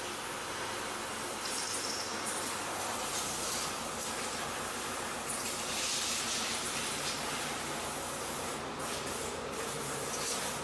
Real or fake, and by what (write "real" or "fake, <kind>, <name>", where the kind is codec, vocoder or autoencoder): real